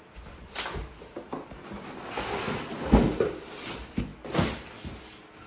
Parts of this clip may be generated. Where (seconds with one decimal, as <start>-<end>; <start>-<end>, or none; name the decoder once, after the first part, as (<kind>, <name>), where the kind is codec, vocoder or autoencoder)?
none